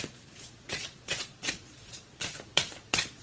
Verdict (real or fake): fake